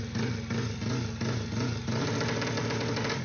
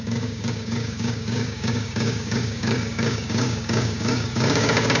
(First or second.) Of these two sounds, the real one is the first